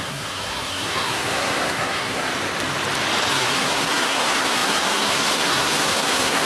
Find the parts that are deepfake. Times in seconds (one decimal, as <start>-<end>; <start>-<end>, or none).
0.0-2.3; 3.3-6.5